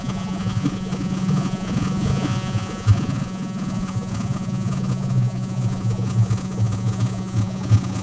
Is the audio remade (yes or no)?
yes